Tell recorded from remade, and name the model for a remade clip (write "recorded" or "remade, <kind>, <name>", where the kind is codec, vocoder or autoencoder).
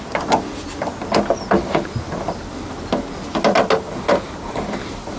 recorded